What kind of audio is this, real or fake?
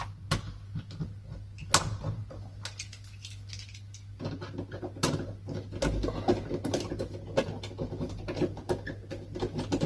real